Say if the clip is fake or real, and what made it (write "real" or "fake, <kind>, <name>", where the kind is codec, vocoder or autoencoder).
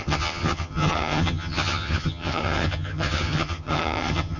fake, vocoder, HiFi-GAN